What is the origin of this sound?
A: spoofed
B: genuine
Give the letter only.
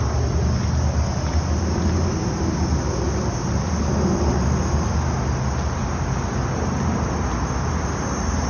B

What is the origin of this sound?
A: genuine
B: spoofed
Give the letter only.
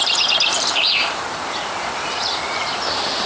B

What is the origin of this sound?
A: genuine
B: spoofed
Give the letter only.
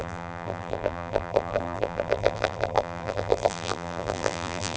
B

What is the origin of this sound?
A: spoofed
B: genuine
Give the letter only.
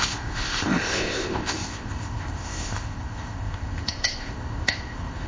A